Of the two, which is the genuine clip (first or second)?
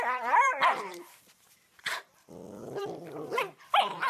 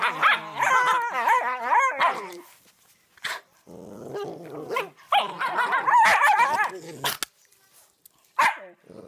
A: second